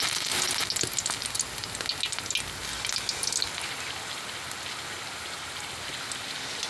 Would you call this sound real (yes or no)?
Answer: yes